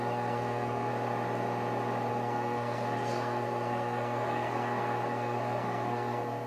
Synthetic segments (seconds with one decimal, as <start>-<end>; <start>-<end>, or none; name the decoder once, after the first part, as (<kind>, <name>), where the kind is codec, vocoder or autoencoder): 0.0-0.9 (codec, SNAC); 2.1-6.5

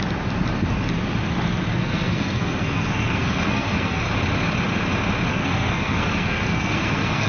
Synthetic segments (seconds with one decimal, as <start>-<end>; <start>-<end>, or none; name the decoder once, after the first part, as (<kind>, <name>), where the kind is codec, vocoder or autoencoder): 1.7-4.0 (codec, SNAC); 5.3-7.3

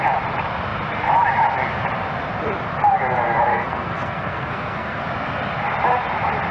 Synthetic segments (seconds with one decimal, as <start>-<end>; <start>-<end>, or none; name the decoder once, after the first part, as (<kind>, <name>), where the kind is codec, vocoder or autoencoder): 3.5-5.0 (codec, SNAC)

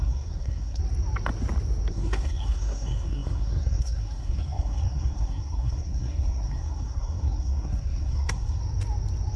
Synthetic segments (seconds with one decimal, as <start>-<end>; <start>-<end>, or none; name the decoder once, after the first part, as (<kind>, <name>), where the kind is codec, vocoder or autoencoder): 0.0-0.8 (codec, SNAC); 1.9-8.6